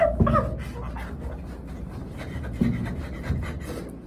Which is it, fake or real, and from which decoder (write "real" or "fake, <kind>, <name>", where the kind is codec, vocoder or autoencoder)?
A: real